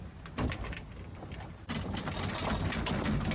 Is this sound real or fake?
real